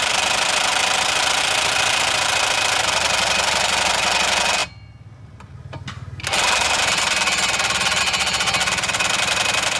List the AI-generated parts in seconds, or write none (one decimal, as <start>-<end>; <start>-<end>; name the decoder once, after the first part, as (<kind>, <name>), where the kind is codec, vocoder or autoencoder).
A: none